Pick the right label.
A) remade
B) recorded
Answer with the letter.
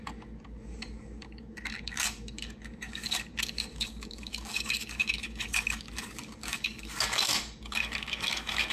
A